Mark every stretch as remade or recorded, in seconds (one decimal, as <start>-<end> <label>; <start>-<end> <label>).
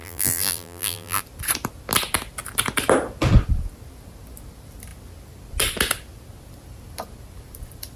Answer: 0.0-1.2 remade; 1.2-8.0 recorded